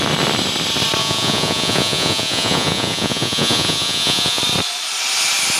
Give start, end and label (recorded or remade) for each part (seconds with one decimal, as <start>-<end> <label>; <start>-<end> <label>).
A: 0.0-1.0 recorded; 1.0-4.4 remade; 4.4-5.6 recorded